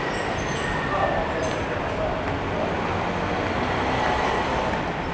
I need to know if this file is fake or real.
real